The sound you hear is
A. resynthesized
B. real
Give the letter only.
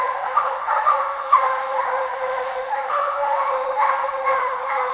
A